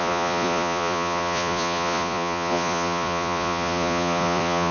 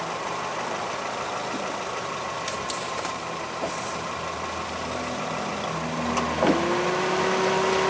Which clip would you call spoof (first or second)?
first